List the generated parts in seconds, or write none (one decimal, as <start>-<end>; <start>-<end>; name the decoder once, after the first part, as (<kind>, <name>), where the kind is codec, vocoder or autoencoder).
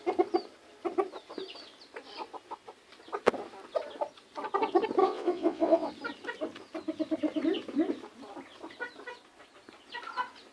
5.0-5.9 (vocoder, WaveNeXt)